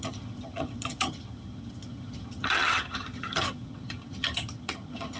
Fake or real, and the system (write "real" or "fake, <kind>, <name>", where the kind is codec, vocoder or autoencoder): fake, vocoder, HiFi-GAN